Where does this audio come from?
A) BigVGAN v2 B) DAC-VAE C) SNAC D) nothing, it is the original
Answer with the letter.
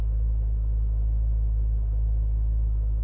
D